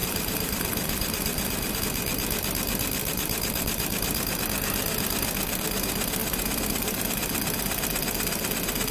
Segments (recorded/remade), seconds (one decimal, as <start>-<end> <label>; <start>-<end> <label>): 0.0-1.8 remade; 1.8-3.0 recorded; 3.0-4.4 remade; 4.4-6.2 recorded; 6.2-7.0 remade; 7.0-8.9 recorded